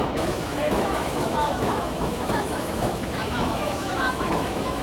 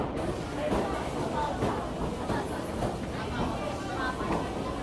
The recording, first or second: second